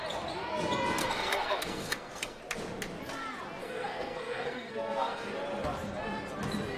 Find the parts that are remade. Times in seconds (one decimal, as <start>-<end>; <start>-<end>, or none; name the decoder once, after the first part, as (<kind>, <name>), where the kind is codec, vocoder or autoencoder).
1.0-2.4 (codec, SNAC); 3.6-5.3